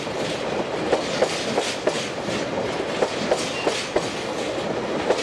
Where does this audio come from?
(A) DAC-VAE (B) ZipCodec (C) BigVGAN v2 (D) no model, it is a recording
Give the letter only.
D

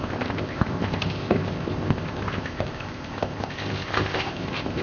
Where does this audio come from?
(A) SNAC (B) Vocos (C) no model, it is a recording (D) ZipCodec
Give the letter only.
D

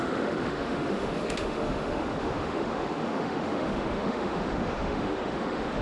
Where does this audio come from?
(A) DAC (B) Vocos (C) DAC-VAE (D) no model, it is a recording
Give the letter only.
C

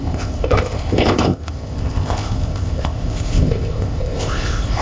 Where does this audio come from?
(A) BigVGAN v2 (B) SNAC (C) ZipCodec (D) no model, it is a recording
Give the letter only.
C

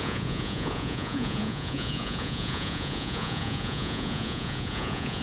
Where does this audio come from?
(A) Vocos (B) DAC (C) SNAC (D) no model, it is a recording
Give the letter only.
A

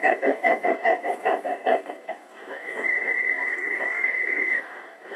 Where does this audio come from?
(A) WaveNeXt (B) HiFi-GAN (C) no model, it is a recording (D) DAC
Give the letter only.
D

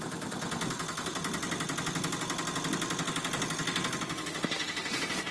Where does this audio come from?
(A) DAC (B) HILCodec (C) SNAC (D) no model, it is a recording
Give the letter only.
D